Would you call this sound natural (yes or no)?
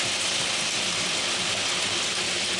yes